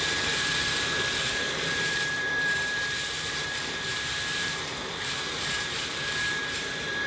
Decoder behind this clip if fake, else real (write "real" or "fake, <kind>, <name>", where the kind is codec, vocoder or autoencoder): fake, vocoder, BigVGAN v2